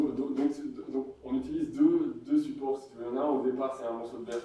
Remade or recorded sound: recorded